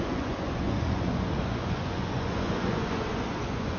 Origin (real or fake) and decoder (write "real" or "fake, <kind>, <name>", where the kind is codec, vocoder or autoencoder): fake, vocoder, Vocos